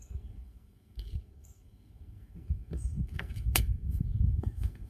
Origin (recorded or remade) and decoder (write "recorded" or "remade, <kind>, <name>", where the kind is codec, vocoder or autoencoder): remade, codec, SNAC